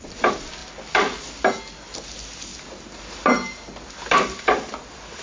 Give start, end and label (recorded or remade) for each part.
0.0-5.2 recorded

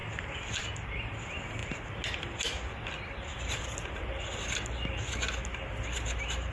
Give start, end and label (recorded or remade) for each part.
0.0-6.5 recorded

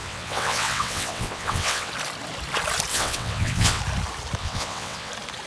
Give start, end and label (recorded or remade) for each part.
0.0-1.9 remade; 1.9-2.9 recorded; 2.9-3.8 remade; 3.8-4.4 recorded; 4.4-5.1 remade; 5.1-5.5 recorded

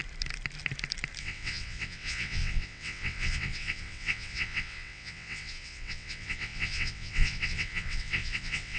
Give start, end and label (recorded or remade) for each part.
0.0-1.2 recorded; 1.2-8.8 remade

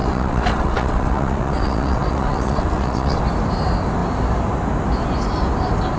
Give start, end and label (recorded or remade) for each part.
0.0-3.2 remade; 3.2-6.0 recorded

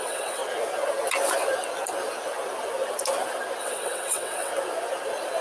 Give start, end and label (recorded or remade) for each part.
0.0-0.4 remade; 0.4-3.6 recorded; 3.6-4.5 remade; 4.5-5.4 recorded

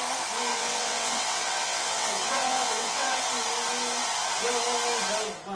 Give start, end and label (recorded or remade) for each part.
0.0-0.5 recorded; 0.5-3.2 remade; 3.2-5.5 recorded